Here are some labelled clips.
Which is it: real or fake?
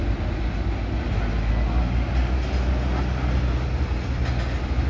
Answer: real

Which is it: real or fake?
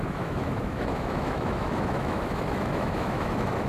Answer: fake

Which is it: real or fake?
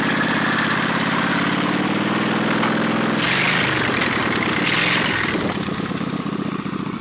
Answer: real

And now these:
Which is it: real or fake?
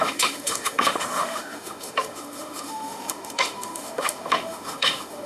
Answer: fake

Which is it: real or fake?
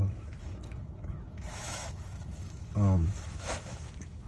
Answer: fake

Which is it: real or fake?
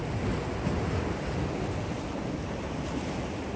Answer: real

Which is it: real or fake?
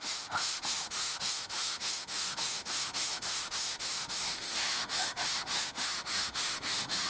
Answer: fake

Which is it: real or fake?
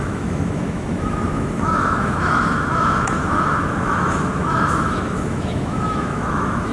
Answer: fake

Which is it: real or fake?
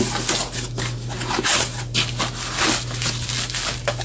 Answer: real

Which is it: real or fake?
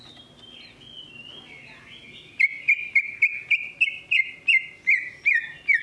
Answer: real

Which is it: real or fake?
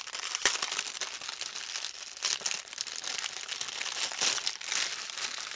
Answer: real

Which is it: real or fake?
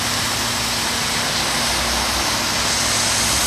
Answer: real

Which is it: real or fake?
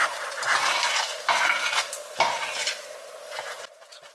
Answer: real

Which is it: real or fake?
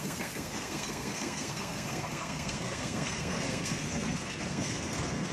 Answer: fake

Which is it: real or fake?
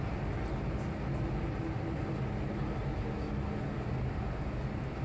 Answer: real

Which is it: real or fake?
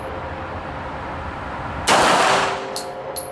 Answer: real